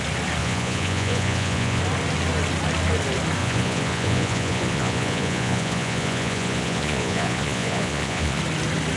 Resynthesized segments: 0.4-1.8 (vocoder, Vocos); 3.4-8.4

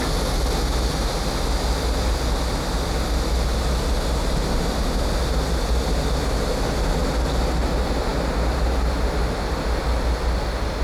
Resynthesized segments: none